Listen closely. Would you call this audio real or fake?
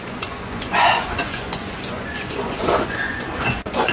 fake